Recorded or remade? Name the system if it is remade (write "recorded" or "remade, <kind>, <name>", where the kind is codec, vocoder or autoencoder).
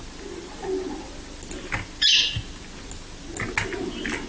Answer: recorded